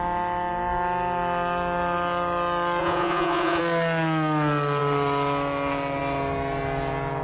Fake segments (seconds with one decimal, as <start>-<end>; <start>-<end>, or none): 2.8-3.6

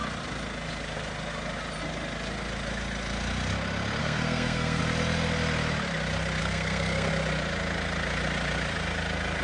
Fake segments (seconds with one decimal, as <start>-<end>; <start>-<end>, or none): 4.0-4.8; 6.4-7.1

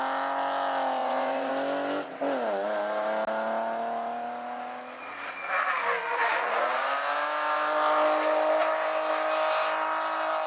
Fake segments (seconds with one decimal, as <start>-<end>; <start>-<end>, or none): 1.0-1.5

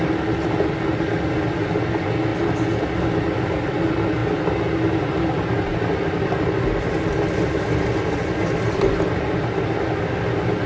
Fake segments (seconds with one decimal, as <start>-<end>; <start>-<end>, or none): none

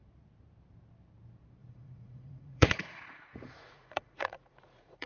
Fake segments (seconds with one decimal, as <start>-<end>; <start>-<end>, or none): 1.6-5.1

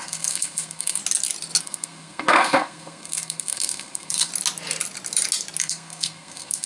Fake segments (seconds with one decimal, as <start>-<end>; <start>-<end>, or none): 0.0-1.0; 1.6-4.3; 5.6-6.7

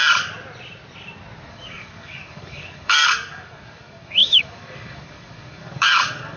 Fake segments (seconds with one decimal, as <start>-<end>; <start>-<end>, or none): 1.5-6.4